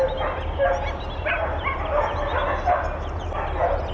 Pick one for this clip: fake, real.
real